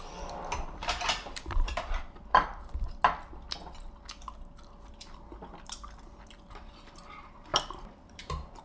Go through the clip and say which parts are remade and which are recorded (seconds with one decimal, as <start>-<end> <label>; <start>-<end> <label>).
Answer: 0.0-0.8 recorded; 0.8-2.7 remade; 2.7-7.5 recorded; 7.5-8.6 remade